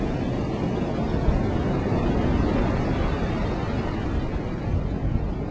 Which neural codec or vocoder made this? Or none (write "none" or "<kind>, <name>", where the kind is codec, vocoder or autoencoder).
none